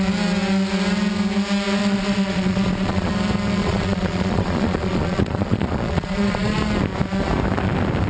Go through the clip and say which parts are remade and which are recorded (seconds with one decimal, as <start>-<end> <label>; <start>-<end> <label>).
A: 0.0-1.8 recorded; 1.8-3.1 remade; 3.1-3.6 recorded; 3.6-6.6 remade; 6.6-8.1 recorded